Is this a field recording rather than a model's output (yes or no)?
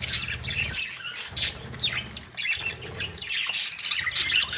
yes